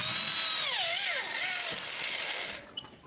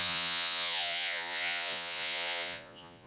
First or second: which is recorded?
first